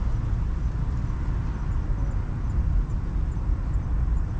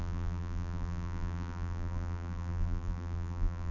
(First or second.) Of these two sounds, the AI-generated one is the second